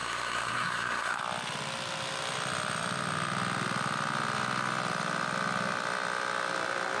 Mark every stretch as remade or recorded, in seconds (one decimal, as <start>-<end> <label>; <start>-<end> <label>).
0.0-1.2 remade; 1.2-7.0 recorded